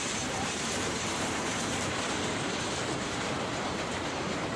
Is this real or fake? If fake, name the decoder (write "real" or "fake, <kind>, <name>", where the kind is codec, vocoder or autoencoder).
fake, vocoder, BigVGAN v2